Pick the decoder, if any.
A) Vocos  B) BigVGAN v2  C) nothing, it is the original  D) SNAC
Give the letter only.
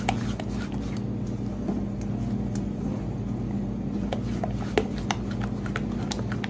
C